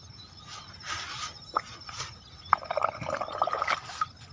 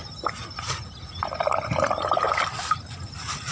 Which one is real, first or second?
first